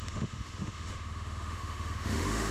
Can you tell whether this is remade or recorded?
remade